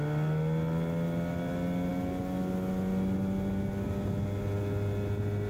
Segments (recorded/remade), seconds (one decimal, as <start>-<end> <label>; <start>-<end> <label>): 0.0-5.5 recorded